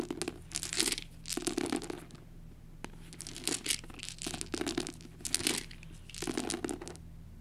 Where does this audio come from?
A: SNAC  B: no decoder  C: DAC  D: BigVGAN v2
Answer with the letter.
B